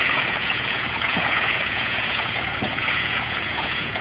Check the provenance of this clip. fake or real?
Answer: fake